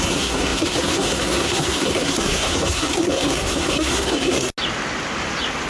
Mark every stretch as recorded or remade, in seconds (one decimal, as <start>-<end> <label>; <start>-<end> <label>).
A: 0.0-4.5 remade; 4.5-5.7 recorded